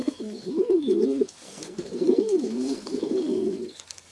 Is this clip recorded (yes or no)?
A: no